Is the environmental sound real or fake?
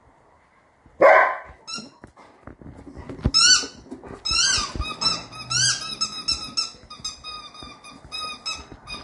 real